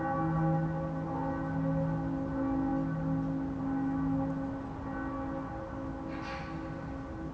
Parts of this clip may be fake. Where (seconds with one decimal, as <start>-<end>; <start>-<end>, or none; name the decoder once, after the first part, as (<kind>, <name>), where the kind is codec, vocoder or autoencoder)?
none